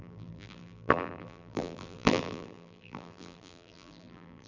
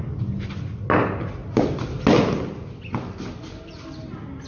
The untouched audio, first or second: second